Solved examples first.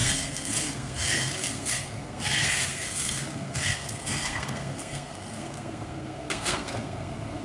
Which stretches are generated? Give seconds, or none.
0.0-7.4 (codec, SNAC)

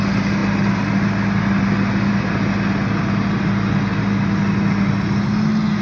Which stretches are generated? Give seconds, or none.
none

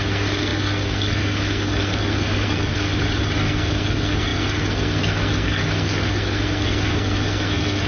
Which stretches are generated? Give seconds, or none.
0.0-2.9 (codec, SNAC); 3.4-7.9

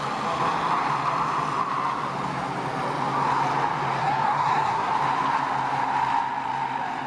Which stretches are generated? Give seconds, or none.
4.0-4.9 (codec, SNAC)

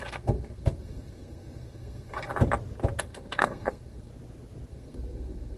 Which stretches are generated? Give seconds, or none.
0.0-2.3 (codec, SNAC); 3.0-4.1; 4.7-5.6

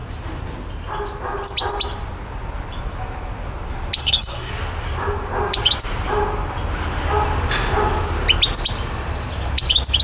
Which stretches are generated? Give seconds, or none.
4.0-4.5 (codec, SNAC)

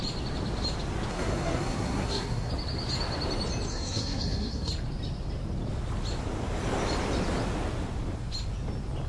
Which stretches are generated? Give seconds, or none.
1.1-2.5 (codec, SNAC); 3.7-4.7